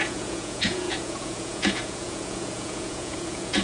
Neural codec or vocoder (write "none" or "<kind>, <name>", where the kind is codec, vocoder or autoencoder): vocoder, Vocos